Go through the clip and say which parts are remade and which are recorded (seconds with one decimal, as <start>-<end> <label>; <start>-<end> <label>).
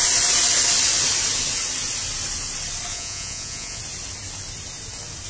0.0-2.9 recorded; 2.9-3.8 remade; 3.8-5.3 recorded